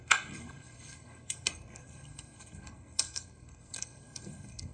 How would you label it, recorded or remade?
remade